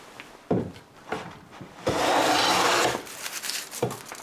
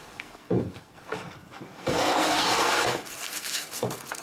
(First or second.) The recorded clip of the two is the first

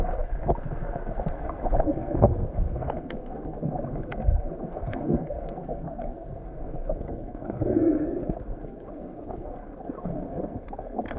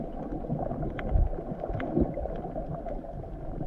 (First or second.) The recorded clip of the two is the second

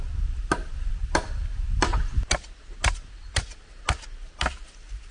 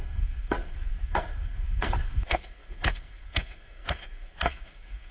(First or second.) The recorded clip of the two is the first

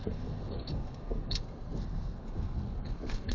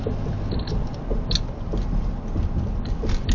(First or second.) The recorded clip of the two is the second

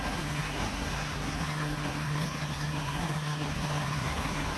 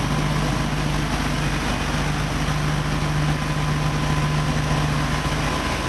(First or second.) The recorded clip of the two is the second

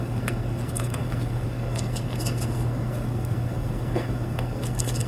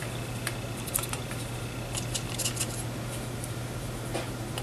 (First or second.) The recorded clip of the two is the second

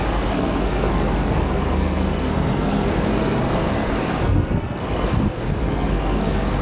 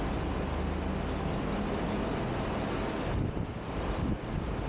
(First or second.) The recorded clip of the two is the second